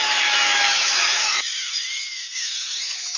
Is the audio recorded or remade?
remade